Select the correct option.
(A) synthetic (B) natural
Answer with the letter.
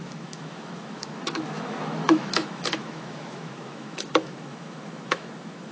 A